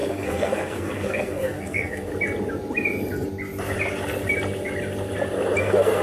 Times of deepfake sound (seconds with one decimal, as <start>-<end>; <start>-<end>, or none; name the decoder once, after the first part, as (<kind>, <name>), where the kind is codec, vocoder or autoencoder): 0.0-2.1 (codec, SNAC); 5.6-6.0

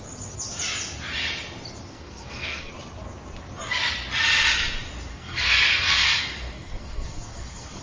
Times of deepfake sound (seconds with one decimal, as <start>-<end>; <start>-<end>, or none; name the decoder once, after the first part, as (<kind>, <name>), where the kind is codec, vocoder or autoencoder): 1.9-2.7 (codec, SNAC); 5.1-7.8

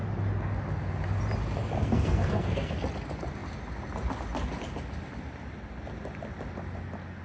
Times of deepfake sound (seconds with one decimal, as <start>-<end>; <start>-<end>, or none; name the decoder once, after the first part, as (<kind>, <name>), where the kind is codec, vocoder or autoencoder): 1.8-2.7 (codec, SNAC)